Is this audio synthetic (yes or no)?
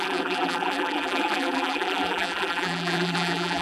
yes